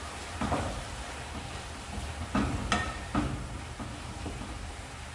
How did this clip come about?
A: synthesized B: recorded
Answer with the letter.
A